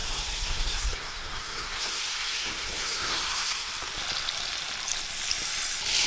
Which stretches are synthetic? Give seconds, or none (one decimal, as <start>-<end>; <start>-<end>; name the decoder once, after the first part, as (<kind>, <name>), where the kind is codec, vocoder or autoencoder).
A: 0.0-3.7 (codec, SNAC)